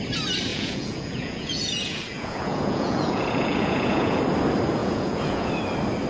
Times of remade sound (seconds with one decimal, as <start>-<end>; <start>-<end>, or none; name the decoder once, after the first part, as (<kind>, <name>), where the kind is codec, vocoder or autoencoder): 0.5-4.2 (vocoder, Vocos); 4.8-5.5